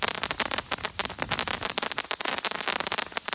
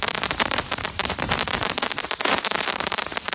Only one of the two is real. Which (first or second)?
first